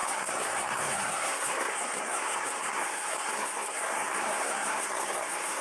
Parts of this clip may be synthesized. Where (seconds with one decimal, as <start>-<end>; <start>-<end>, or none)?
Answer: 0.0-5.6